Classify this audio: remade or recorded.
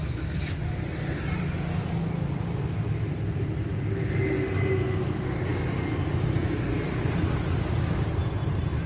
recorded